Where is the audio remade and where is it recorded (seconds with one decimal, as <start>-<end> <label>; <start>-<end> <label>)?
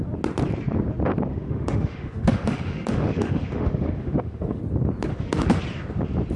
0.0-1.3 recorded; 1.3-4.6 remade; 4.6-5.1 recorded; 5.1-5.6 remade; 5.6-6.4 recorded